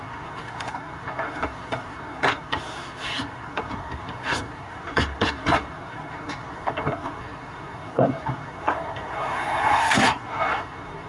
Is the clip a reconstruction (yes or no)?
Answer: yes